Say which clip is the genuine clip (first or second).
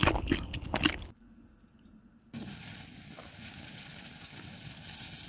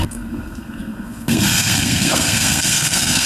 first